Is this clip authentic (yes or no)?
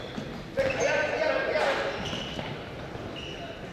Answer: yes